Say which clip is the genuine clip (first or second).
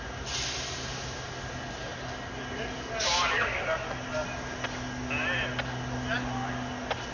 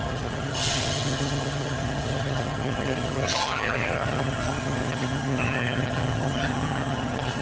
first